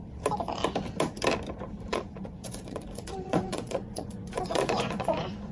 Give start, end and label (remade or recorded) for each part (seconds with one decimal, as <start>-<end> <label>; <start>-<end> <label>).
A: 0.0-1.9 recorded; 1.9-5.5 remade